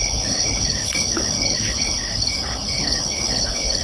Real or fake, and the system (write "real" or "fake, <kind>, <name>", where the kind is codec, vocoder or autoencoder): fake, codec, HILCodec